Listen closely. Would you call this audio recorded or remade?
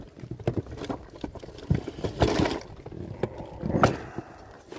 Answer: recorded